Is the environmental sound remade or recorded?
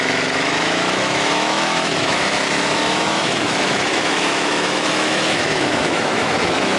remade